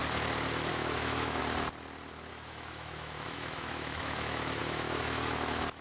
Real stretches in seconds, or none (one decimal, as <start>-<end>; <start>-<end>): 0.0-0.7; 1.4-2.3